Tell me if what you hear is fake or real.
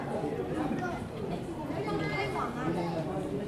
fake